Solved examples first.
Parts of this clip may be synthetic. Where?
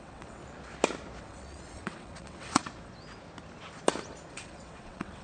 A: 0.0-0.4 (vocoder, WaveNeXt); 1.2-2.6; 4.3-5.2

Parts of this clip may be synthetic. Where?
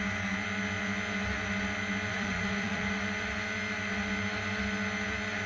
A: 2.1-2.9 (vocoder, Vocos)